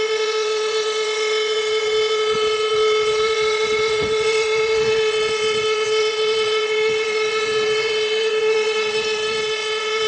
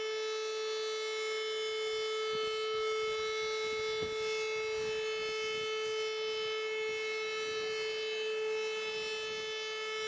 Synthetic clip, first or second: first